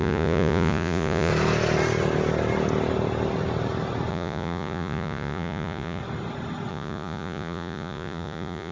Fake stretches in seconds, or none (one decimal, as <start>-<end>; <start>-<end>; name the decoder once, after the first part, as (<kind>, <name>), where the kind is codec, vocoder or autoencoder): 0.0-1.3 (vocoder, Vocos); 4.1-6.0; 6.7-8.7